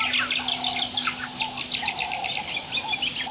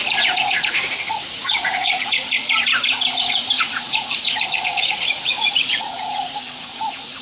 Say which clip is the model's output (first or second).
second